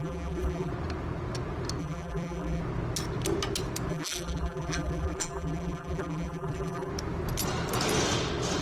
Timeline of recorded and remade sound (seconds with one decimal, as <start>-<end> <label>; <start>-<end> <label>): 0.0-0.7 remade; 0.7-1.8 recorded; 1.8-2.6 remade; 2.6-3.9 recorded; 3.9-6.9 remade; 6.9-8.6 recorded

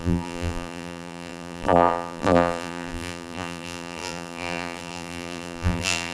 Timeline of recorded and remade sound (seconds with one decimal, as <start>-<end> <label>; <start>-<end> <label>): 0.0-6.1 remade

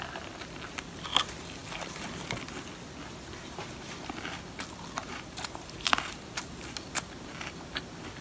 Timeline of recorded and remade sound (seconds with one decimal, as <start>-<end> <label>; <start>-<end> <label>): 0.0-5.0 recorded; 5.0-5.9 remade; 5.9-8.2 recorded

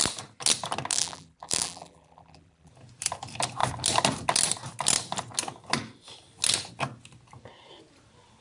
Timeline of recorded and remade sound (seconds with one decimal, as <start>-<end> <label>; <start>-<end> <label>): 0.0-0.9 recorded; 0.9-2.7 remade; 2.7-8.4 recorded

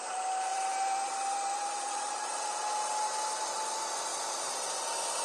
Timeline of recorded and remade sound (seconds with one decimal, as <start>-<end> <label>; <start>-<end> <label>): 0.0-0.5 recorded; 0.5-2.5 remade; 2.5-5.2 recorded